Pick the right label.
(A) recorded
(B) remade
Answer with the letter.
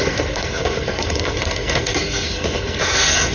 B